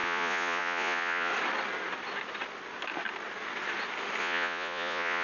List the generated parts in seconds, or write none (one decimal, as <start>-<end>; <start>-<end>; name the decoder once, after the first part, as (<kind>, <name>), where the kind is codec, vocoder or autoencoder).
0.0-1.3 (vocoder, Vocos); 4.2-5.2